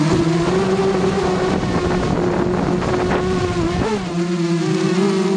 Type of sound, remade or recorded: recorded